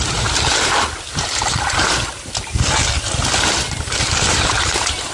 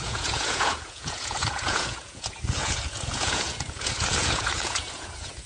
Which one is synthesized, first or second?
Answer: second